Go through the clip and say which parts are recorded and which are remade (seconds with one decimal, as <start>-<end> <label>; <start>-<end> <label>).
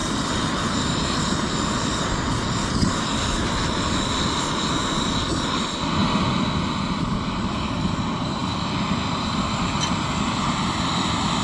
0.0-11.4 recorded